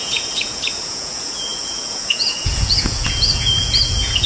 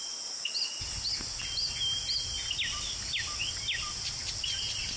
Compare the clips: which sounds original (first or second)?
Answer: second